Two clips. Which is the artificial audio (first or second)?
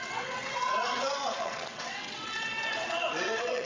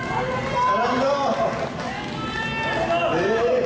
first